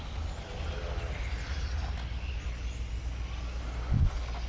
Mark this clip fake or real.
real